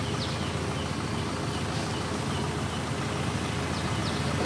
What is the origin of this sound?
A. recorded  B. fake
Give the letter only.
A